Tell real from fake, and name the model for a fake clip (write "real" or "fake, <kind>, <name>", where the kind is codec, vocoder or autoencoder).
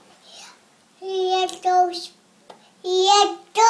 real